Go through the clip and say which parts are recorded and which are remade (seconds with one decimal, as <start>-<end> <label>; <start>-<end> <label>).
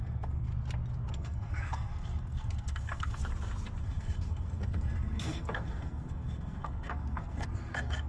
0.0-0.5 remade; 0.5-1.1 recorded; 1.1-3.2 remade; 3.2-3.8 recorded; 3.8-8.1 remade